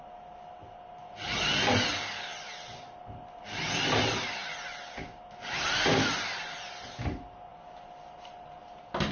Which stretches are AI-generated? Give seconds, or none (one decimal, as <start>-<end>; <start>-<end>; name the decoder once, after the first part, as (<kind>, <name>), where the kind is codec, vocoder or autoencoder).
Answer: none